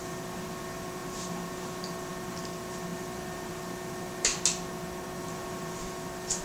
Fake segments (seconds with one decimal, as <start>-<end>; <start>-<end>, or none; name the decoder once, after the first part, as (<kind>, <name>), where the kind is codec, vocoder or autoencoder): 0.0-4.3 (vocoder, BigVGAN v2); 5.2-6.4